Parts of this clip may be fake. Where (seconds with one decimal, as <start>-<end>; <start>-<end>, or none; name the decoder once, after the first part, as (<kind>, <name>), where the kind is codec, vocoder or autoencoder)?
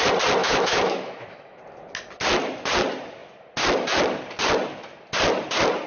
0.4-1.6 (autoencoder, DAC-VAE)